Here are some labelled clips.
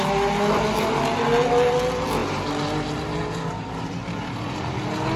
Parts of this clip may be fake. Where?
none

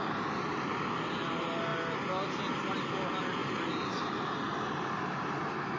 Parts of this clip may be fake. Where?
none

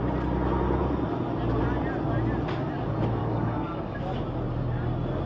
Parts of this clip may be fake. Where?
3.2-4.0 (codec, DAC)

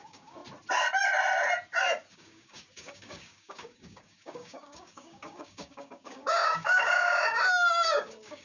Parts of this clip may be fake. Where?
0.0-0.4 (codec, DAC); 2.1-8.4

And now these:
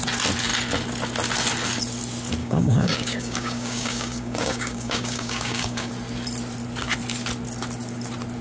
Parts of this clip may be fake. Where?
2.4-5.9 (codec, DAC)

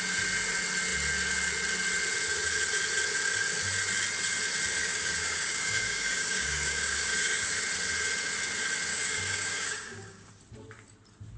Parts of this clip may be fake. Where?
4.8-7.6 (codec, DAC); 8.9-10.3